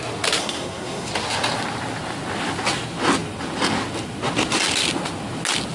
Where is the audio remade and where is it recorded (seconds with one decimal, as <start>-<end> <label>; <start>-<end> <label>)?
0.0-0.4 recorded; 0.4-1.1 remade; 1.1-5.7 recorded